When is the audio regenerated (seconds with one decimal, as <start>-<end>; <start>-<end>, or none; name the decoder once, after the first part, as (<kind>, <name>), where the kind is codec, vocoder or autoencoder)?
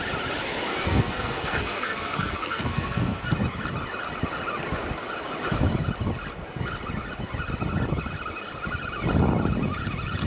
0.7-3.3 (codec, SNAC)